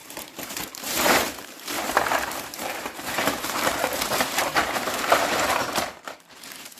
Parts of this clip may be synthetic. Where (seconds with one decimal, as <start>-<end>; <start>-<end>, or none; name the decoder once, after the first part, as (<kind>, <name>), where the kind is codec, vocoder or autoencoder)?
0.0-6.8 (vocoder, BigVGAN v2)